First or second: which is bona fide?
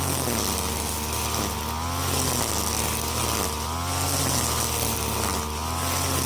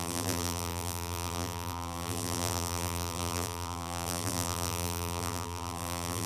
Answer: first